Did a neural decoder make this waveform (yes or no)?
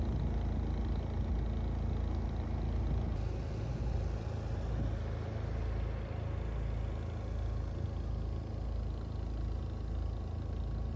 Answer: no